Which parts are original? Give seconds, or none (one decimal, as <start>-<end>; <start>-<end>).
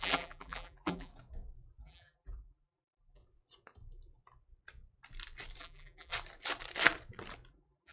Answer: 1.1-1.8; 3.2-5.6; 6.1-7.5